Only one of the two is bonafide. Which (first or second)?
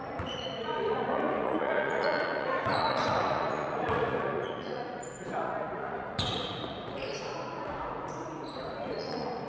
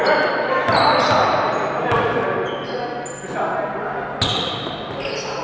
second